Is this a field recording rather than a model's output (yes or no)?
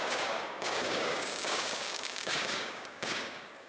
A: no